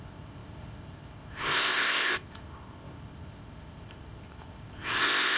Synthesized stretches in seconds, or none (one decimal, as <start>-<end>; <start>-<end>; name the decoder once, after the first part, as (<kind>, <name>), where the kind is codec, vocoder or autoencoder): 0.0-5.4 (codec, ZipCodec)